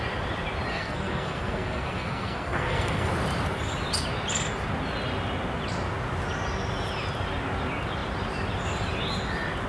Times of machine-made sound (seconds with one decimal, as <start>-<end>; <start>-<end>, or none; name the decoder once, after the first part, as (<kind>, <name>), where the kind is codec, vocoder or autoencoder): 0.7-3.1 (codec, SNAC)